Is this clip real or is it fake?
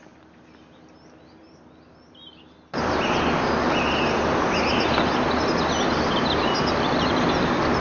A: real